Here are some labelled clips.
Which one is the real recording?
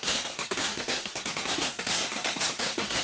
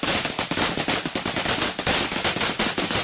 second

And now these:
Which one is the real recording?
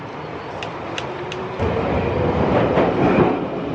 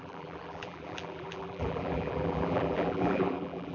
first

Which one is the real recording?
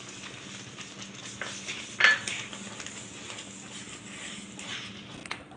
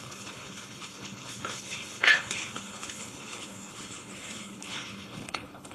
first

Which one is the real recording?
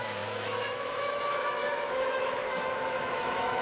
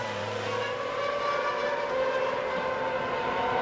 second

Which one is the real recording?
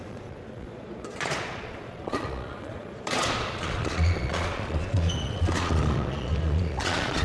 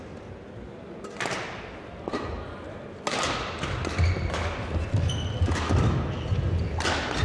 second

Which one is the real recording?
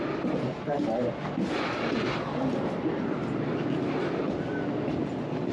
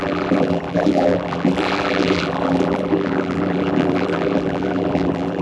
first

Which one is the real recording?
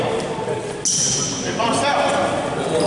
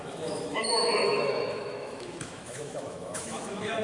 first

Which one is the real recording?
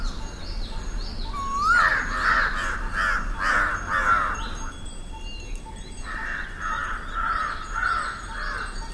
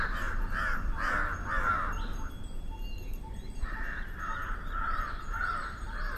first